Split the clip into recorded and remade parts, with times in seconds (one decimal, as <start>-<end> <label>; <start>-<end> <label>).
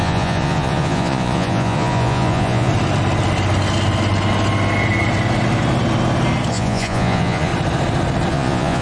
0.0-2.7 remade; 2.7-6.5 recorded; 6.5-7.5 remade; 7.5-8.3 recorded; 8.3-8.8 remade